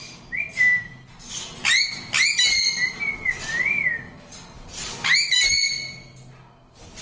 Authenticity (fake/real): real